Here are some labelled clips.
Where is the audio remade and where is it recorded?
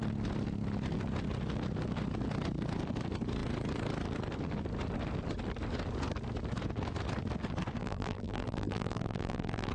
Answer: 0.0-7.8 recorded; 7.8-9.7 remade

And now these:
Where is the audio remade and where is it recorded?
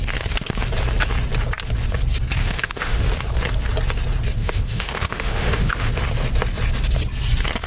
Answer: 0.0-2.4 recorded; 2.4-3.0 remade; 3.0-4.4 recorded; 4.4-5.9 remade; 5.9-7.7 recorded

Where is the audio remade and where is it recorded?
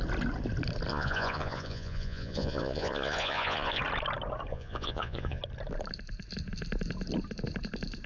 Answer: 0.0-0.9 recorded; 0.9-3.8 remade; 3.8-4.5 recorded; 4.5-5.4 remade; 5.4-8.1 recorded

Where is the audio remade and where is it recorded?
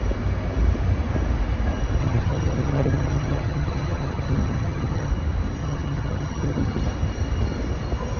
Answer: 0.0-2.0 recorded; 2.0-5.1 remade; 5.1-5.6 recorded; 5.6-6.8 remade; 6.8-8.2 recorded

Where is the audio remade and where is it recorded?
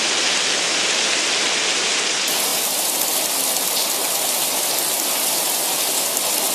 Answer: 0.0-6.5 recorded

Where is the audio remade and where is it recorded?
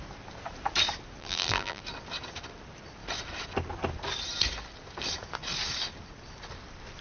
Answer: 0.0-1.2 recorded; 1.2-1.8 remade; 1.8-7.0 recorded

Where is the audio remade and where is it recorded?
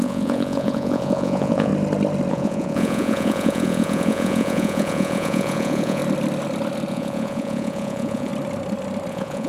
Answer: 0.0-1.7 remade; 1.7-2.3 recorded; 2.3-6.0 remade; 6.0-6.9 recorded; 6.9-8.3 remade; 8.3-9.1 recorded; 9.1-9.5 remade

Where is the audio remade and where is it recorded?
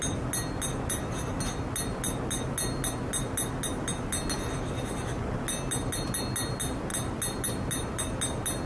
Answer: 0.0-8.7 recorded